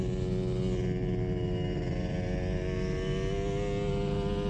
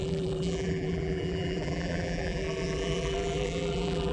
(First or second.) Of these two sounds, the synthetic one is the second